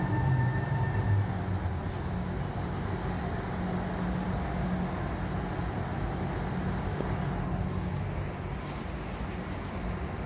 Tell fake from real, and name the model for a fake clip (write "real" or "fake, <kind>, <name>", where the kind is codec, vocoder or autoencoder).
real